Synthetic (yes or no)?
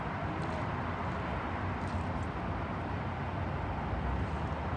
no